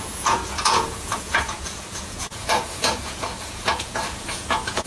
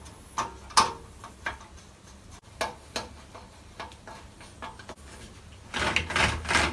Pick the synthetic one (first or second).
first